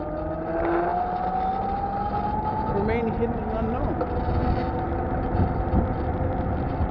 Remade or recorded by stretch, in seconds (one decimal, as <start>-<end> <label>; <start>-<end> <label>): 0.0-6.9 recorded

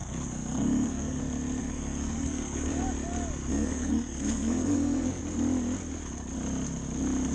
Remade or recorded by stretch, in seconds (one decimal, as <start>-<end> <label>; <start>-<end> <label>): 0.0-1.2 remade; 1.2-1.6 recorded; 1.6-2.7 remade; 2.7-3.5 recorded; 3.5-5.2 remade; 5.2-7.3 recorded

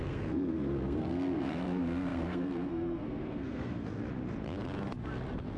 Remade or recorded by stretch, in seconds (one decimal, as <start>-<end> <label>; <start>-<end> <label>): 0.0-4.0 remade; 4.0-5.6 recorded

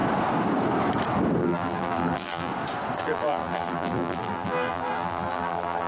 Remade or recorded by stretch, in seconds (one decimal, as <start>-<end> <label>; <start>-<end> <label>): 0.0-1.4 recorded; 1.4-2.5 remade; 2.5-3.0 recorded; 3.0-5.9 remade

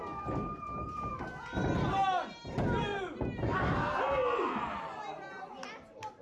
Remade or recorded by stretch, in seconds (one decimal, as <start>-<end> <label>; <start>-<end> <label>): 0.0-6.2 recorded

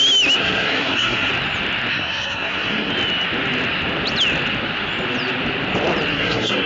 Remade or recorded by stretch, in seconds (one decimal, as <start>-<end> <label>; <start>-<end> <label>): 0.0-0.4 recorded; 0.4-1.3 remade; 1.3-1.9 recorded; 1.9-2.9 remade; 2.9-6.1 recorded; 6.1-6.7 remade